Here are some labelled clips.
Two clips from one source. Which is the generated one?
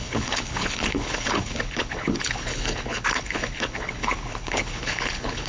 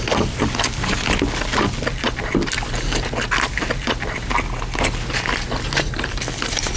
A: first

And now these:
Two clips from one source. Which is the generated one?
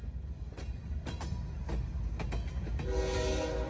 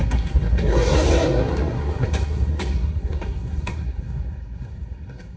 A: second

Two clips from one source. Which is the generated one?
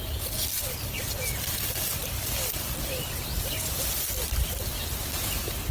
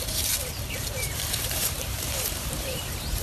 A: second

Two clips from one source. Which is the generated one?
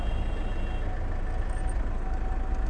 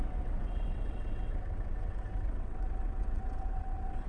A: second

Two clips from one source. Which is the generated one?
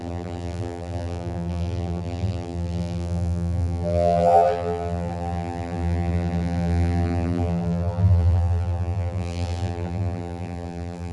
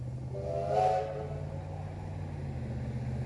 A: first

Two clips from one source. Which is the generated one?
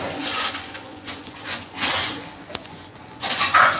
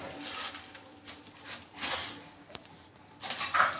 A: first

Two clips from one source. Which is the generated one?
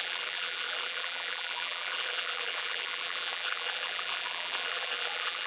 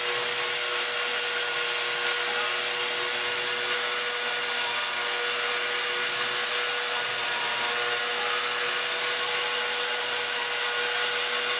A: first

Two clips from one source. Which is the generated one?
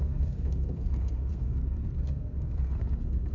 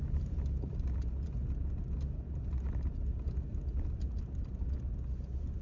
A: first